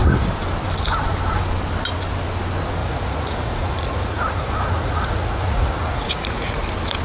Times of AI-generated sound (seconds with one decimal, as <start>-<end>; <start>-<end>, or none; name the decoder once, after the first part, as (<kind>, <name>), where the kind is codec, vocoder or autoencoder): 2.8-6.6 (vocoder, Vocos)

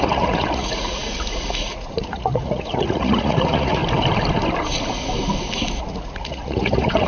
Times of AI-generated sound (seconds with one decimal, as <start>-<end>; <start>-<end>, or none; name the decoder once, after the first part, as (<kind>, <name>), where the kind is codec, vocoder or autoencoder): 0.0-3.8 (vocoder, Vocos); 5.8-7.1

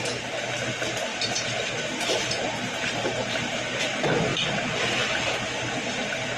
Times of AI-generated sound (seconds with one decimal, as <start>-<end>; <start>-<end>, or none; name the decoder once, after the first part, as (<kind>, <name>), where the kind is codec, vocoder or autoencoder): 1.1-3.8 (vocoder, BigVGAN v2)

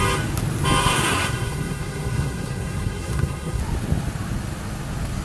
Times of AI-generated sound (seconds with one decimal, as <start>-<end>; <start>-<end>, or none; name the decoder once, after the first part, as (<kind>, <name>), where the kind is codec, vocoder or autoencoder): 0.8-3.6 (codec, SNAC)

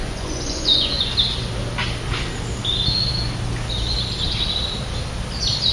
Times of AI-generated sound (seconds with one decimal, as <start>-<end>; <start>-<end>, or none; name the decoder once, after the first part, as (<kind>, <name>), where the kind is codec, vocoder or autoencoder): 0.0-1.1 (vocoder, Vocos)